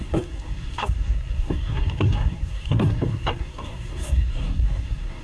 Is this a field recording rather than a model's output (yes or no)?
no